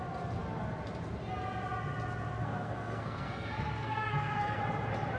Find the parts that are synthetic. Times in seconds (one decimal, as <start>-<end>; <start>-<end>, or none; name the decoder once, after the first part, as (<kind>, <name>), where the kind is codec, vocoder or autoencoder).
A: 2.4-4.6 (codec, SNAC)